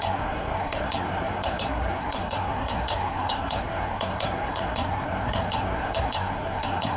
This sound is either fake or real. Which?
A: fake